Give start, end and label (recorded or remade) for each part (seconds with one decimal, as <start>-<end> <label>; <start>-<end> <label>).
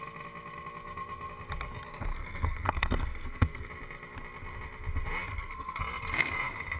0.0-2.1 recorded; 2.1-3.7 remade; 3.7-5.3 recorded; 5.3-5.8 remade; 5.8-6.8 recorded